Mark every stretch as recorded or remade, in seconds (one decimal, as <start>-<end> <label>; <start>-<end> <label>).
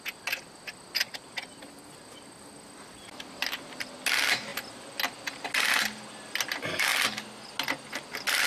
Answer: 0.0-1.0 recorded; 1.0-2.4 remade; 2.4-8.5 recorded